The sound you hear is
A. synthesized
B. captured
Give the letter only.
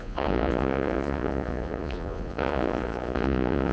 A